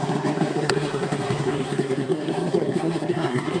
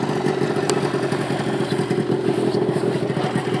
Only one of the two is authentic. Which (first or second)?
second